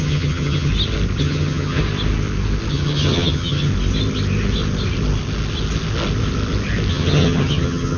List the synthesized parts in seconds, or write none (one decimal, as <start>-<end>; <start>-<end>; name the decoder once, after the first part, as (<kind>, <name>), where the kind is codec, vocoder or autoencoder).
0.0-0.7 (vocoder, HiFi-GAN); 1.2-1.8; 2.7-3.7; 6.9-8.0